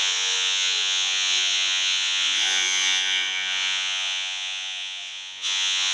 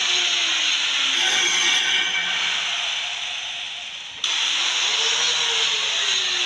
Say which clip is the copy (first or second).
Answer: first